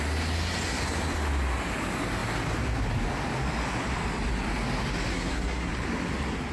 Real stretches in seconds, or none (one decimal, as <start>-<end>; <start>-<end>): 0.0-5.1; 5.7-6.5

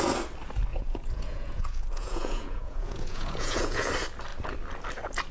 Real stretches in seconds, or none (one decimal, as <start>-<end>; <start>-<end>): 0.0-0.7; 3.9-5.3

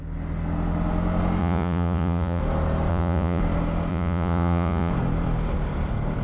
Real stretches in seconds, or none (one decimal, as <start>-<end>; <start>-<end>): 0.0-1.4; 2.4-2.9; 3.4-3.9; 4.9-6.2

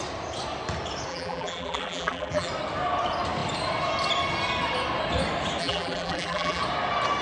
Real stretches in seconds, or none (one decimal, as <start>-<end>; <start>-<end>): 0.0-1.1; 2.5-5.6; 6.6-7.2